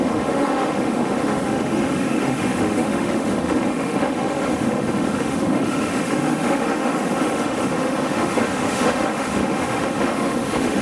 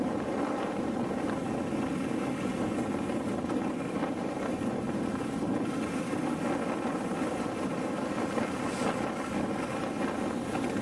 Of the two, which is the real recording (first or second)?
second